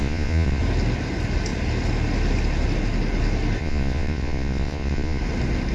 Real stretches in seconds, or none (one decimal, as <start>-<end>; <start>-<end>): 0.6-3.6; 5.2-5.7